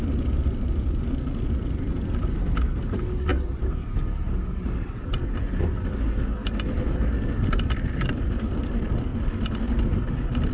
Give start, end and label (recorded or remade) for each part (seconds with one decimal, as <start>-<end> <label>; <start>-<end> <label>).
0.0-10.5 recorded